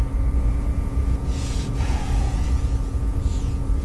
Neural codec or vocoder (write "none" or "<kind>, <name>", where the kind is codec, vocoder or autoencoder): vocoder, Vocos